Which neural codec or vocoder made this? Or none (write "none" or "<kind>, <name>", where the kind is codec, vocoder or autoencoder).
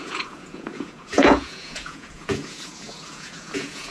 vocoder, Vocos